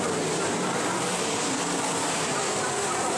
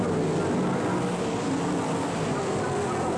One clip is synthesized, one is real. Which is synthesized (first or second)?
first